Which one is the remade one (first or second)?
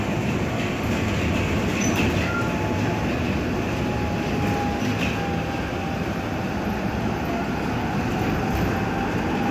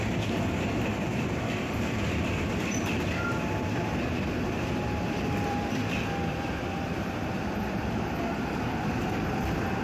second